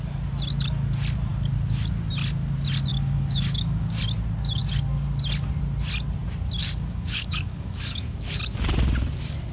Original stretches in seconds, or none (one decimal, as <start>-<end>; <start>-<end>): 0.0-2.9; 4.0-6.6; 8.4-9.5